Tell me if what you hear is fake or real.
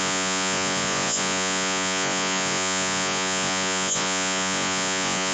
fake